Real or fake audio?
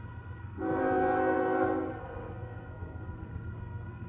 fake